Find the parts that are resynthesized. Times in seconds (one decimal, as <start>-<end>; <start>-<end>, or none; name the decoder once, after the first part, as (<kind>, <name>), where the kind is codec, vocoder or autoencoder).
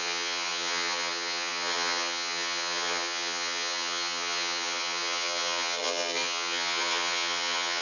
0.0-7.8 (vocoder, HiFi-GAN)